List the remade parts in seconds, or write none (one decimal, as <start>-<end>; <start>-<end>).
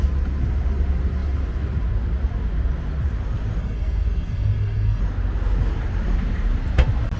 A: 3.6-5.0